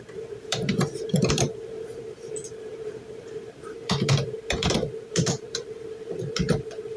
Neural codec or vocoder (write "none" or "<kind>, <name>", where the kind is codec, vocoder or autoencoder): vocoder, BigVGAN v2